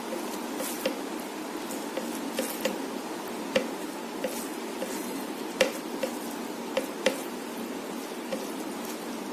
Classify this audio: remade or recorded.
recorded